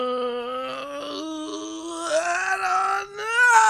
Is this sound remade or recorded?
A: recorded